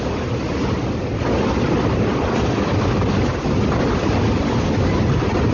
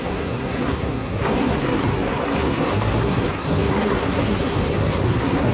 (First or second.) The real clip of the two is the first